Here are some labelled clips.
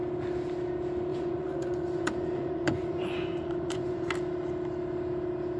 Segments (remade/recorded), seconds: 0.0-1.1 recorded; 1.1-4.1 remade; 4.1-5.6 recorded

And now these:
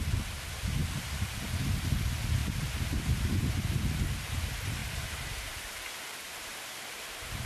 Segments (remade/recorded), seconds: 0.0-0.8 recorded; 0.8-1.9 remade; 1.9-2.4 recorded; 2.4-3.7 remade; 3.7-4.8 recorded; 4.8-7.5 remade

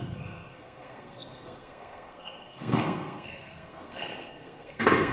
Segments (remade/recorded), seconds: 0.0-5.1 remade

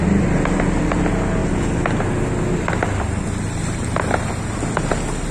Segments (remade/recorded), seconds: 0.0-5.3 recorded

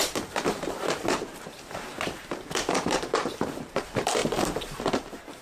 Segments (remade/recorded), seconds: 0.0-1.9 remade; 1.9-2.6 recorded; 2.6-5.4 remade